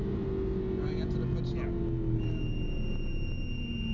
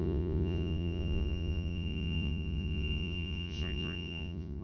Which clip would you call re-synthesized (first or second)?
second